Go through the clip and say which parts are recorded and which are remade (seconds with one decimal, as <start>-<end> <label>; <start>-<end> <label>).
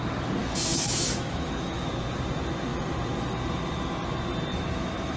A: 0.0-0.4 recorded; 0.4-1.9 remade; 1.9-4.5 recorded; 4.5-5.2 remade